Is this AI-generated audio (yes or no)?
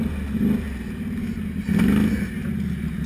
no